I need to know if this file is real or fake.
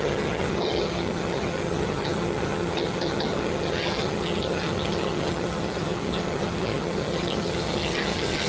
fake